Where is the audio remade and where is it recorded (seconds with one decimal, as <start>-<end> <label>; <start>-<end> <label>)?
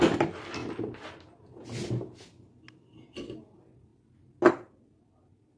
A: 0.0-5.6 recorded